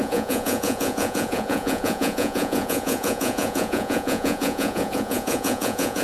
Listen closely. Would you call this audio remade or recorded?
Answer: remade